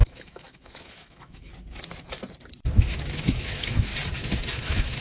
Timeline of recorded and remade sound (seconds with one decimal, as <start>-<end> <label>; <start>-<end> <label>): 0.0-1.5 remade; 1.5-2.7 recorded; 2.7-3.9 remade; 3.9-4.5 recorded; 4.5-5.0 remade